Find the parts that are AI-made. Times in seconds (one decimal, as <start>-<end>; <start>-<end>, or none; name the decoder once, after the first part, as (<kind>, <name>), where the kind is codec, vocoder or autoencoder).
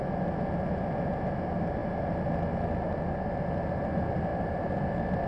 4.3-4.8 (vocoder, BigVGAN v2)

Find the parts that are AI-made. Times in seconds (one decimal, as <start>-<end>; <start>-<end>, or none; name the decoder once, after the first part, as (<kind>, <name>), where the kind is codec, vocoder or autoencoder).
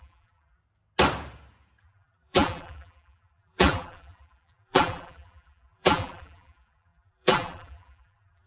0.0-0.6 (vocoder, BigVGAN v2); 1.8-8.5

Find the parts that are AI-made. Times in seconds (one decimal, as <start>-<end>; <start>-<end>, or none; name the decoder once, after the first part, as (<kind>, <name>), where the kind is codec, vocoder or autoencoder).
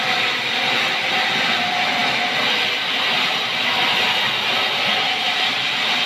none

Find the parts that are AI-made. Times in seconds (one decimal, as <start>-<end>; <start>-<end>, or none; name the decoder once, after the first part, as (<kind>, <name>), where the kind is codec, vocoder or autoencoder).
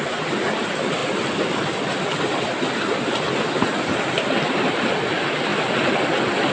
0.0-6.5 (vocoder, BigVGAN v2)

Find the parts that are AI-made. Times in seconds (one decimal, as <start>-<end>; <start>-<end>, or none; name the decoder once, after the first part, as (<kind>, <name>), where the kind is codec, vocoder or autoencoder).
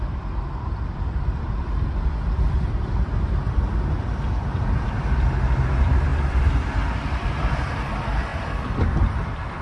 0.0-9.6 (vocoder, BigVGAN v2)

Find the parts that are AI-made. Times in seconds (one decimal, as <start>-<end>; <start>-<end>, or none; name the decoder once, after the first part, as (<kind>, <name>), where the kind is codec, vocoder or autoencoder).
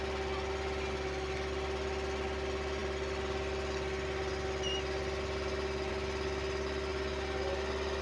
none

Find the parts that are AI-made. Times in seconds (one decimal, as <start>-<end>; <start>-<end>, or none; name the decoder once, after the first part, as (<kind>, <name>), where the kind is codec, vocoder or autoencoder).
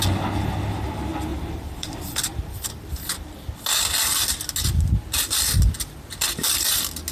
1.3-3.0 (vocoder, BigVGAN v2)